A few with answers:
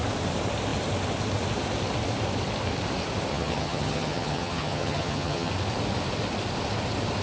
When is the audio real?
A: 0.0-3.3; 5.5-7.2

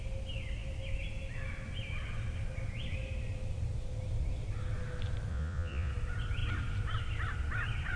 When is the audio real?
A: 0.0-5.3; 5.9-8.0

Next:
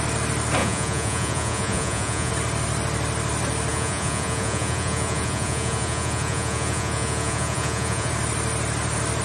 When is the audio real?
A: 0.0-0.6; 2.3-3.7; 8.1-9.2